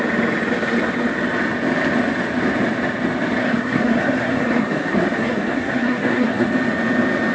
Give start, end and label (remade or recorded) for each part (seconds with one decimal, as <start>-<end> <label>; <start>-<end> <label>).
0.0-3.4 recorded; 3.4-6.5 remade; 6.5-7.3 recorded